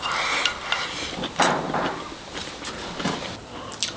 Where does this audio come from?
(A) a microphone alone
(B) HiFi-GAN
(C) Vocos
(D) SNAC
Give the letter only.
A